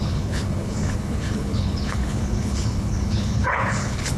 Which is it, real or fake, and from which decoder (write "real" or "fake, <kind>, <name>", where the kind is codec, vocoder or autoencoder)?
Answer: fake, codec, HILCodec